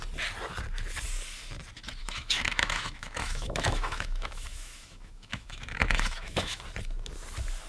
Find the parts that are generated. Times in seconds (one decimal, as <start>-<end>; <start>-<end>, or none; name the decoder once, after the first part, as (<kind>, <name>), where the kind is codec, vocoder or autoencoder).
2.0-6.6 (autoencoder, DAC-VAE)